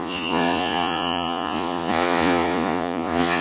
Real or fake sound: fake